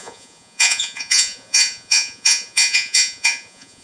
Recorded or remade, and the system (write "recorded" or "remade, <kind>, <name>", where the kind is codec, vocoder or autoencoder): remade, vocoder, Vocos